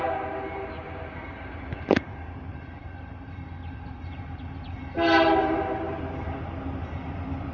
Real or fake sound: fake